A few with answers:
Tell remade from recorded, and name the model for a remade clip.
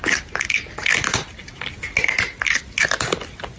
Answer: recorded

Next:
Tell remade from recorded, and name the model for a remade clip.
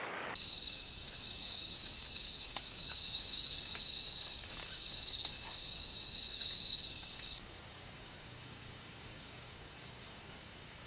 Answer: remade, codec, DAC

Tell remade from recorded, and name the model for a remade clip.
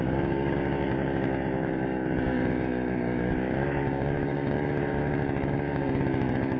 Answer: remade, codec, DAC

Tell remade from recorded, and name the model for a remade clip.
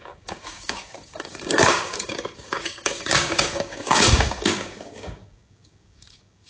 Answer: remade, codec, DAC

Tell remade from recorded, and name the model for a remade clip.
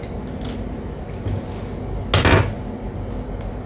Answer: recorded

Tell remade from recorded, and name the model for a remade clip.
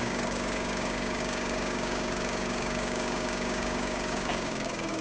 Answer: remade, codec, DAC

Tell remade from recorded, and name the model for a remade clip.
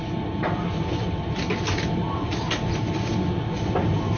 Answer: recorded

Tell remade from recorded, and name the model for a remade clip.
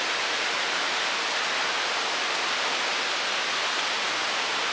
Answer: recorded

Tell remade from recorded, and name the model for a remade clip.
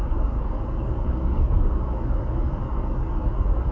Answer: remade, codec, DAC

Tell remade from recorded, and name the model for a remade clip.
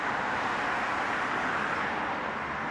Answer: recorded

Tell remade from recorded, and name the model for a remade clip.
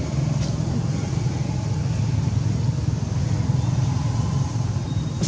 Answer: recorded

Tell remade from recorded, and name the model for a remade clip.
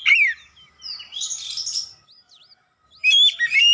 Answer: recorded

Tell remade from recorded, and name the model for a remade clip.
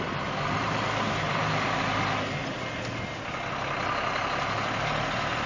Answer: recorded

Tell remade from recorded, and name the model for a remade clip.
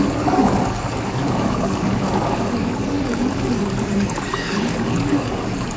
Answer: remade, codec, DAC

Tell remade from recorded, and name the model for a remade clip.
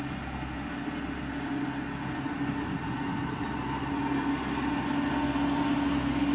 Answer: recorded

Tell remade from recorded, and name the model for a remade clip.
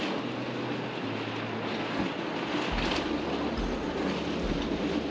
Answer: recorded